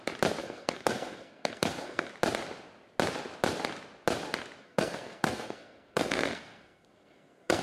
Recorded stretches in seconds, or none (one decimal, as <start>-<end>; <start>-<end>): 0.0-0.4; 2.1-4.6